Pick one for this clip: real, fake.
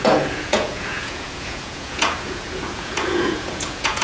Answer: fake